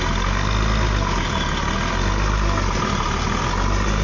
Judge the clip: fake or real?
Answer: real